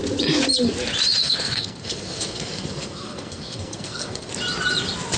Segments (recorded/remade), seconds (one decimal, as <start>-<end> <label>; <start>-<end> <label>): 0.0-1.2 recorded; 1.2-4.3 remade; 4.3-5.2 recorded

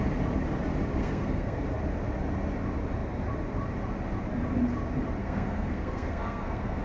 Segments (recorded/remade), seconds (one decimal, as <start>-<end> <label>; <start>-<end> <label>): 0.0-1.0 recorded; 1.0-1.6 remade; 1.6-5.2 recorded; 5.2-6.8 remade

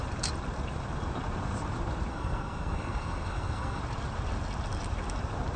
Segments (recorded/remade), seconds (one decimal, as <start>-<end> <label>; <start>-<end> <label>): 0.0-2.1 recorded; 2.1-3.8 remade; 3.8-5.6 recorded

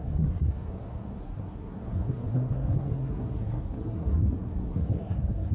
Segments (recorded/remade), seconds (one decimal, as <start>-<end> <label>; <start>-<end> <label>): 0.0-5.5 remade

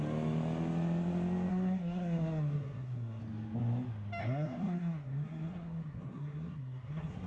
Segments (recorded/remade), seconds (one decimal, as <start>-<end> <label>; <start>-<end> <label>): 0.0-1.5 recorded; 1.5-3.2 remade; 3.2-4.2 recorded; 4.2-7.3 remade

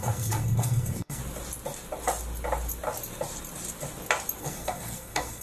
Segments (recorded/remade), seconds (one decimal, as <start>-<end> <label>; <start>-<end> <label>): 0.0-1.2 remade; 1.2-4.4 recorded; 4.4-5.4 remade

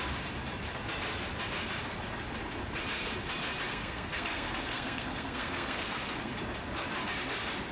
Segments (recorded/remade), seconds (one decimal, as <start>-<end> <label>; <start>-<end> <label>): 0.0-3.7 recorded; 3.7-6.3 remade; 6.3-7.7 recorded

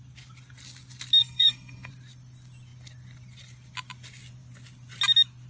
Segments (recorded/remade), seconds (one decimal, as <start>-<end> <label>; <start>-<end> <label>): 0.0-1.2 recorded; 1.2-1.9 remade; 1.9-5.5 recorded